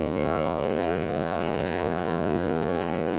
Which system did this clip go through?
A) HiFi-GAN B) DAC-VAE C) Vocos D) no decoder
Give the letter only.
C